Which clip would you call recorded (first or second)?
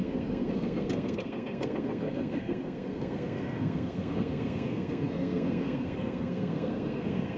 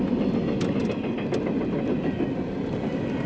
second